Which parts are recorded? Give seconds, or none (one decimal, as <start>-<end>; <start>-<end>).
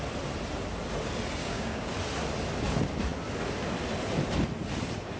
0.0-1.4; 1.9-5.2